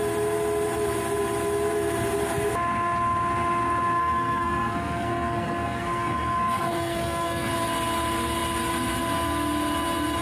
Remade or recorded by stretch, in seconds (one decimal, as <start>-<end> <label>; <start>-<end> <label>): 0.0-4.0 recorded; 4.0-7.5 remade; 7.5-10.2 recorded